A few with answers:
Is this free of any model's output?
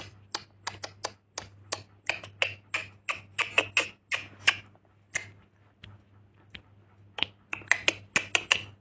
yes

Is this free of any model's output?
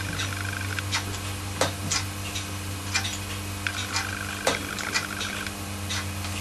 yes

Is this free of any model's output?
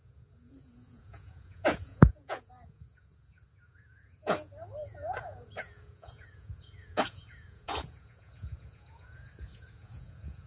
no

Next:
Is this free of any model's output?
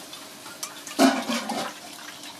yes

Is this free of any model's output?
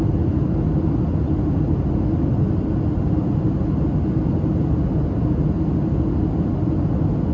yes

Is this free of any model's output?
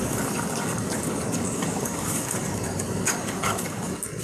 no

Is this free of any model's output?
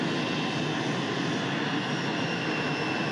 yes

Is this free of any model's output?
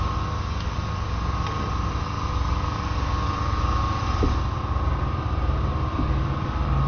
no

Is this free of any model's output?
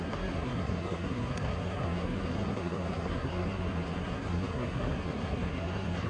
no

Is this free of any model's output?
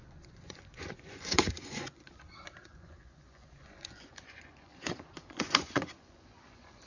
no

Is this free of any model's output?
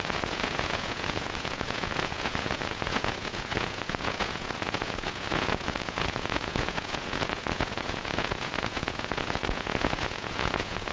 no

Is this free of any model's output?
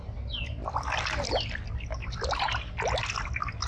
yes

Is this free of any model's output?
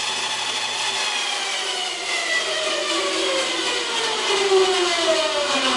yes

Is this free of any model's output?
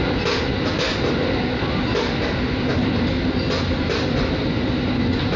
yes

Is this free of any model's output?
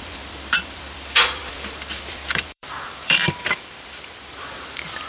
no